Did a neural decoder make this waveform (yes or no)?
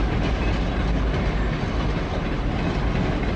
no